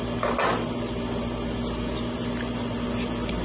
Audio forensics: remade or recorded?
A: recorded